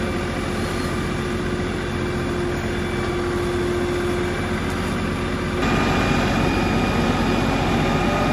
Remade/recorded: recorded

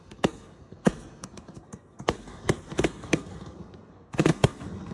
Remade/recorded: remade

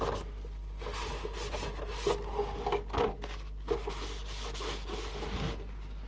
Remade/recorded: recorded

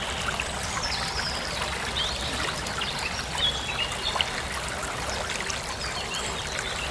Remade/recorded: recorded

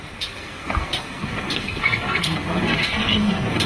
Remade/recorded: remade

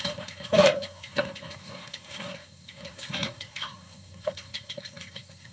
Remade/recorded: remade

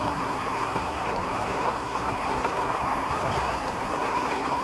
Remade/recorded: remade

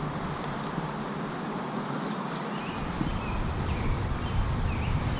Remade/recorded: recorded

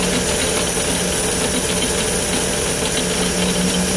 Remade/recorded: recorded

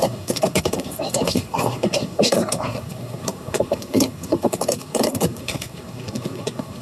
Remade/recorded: remade